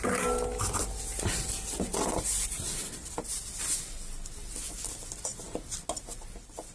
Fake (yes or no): no